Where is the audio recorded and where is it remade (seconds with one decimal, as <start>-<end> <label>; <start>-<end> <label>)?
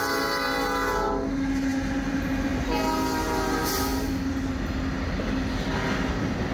0.0-6.5 recorded